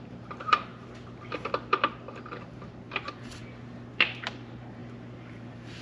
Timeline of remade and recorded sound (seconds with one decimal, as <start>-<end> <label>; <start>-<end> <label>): 0.0-0.7 remade; 0.7-2.5 recorded; 2.5-3.4 remade; 3.4-4.2 recorded; 4.2-4.8 remade; 4.8-5.3 recorded; 5.3-5.8 remade